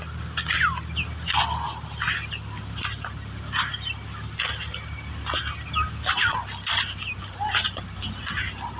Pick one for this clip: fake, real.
real